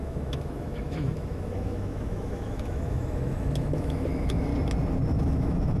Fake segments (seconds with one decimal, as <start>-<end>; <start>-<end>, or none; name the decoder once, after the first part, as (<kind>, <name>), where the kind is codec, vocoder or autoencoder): 0.0-4.5 (autoencoder, DAC-VAE); 5.1-5.8